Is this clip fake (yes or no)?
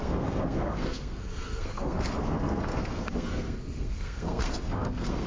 yes